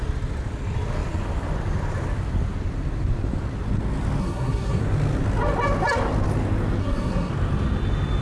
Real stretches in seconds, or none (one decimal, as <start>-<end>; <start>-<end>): 0.0-4.2; 4.8-6.8; 7.3-8.2